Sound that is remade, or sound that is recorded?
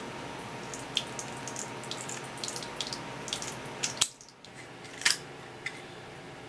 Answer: recorded